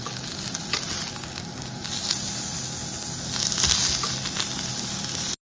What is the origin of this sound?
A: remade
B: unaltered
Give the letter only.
B